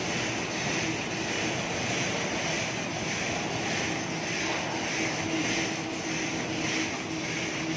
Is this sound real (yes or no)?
yes